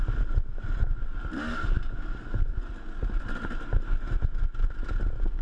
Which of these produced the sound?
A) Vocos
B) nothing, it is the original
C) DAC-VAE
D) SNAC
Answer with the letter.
B